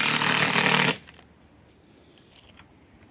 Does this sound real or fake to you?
real